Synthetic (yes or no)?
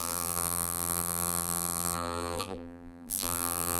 yes